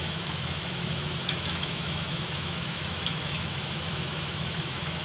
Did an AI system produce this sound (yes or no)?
yes